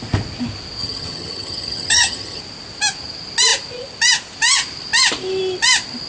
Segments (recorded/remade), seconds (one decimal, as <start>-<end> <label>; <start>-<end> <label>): 0.0-0.8 recorded; 0.8-2.4 remade; 2.4-6.1 recorded